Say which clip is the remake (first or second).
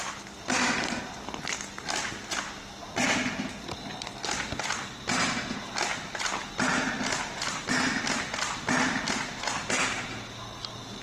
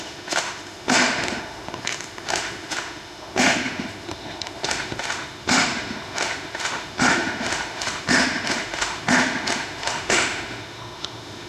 second